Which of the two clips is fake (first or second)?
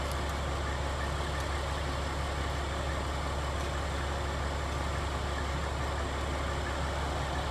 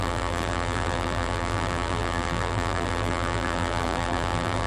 second